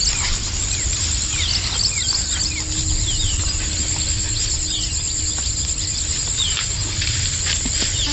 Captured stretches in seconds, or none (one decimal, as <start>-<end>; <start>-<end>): 0.0-8.1